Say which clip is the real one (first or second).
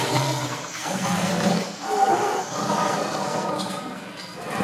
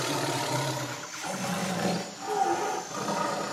second